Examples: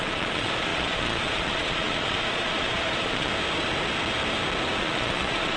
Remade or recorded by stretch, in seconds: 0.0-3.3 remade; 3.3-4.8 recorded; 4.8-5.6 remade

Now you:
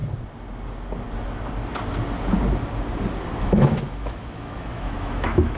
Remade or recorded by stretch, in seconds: 0.0-3.4 recorded; 3.4-5.6 remade

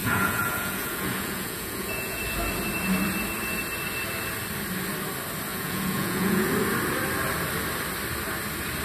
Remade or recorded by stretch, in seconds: 0.0-2.2 remade; 2.2-5.5 recorded; 5.5-6.5 remade; 6.5-8.8 recorded

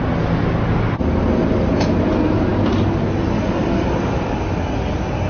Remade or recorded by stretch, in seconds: 0.0-5.3 recorded

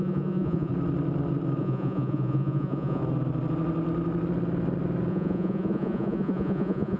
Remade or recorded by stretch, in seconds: 0.0-0.7 remade; 0.7-1.6 recorded; 1.6-3.0 remade; 3.0-5.1 recorded; 5.1-7.0 remade

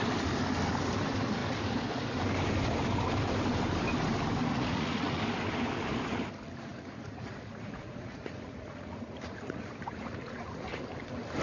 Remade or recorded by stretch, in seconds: 0.0-4.5 recorded; 4.5-5.2 remade; 5.2-6.7 recorded; 6.7-10.8 remade; 10.8-11.4 recorded

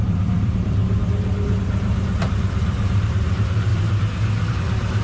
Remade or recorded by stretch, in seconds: 0.0-3.7 remade; 3.7-4.5 recorded; 4.5-5.0 remade

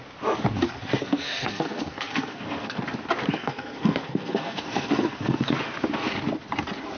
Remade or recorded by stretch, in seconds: 0.0-1.0 recorded; 1.0-2.8 remade; 2.8-3.4 recorded; 3.4-5.6 remade; 5.6-7.0 recorded